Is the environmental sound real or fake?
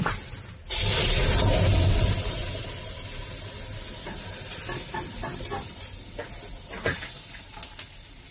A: real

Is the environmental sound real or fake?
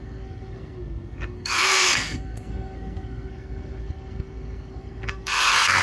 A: fake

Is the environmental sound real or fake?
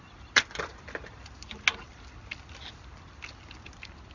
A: real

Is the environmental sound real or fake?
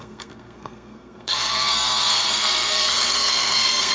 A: fake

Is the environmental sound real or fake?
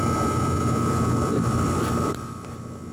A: real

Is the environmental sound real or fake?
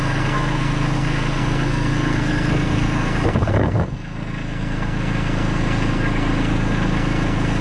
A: fake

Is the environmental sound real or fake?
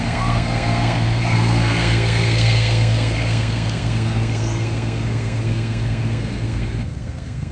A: fake